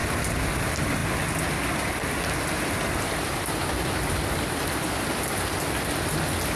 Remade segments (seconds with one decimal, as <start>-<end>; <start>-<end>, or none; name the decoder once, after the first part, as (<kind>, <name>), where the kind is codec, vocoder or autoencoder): none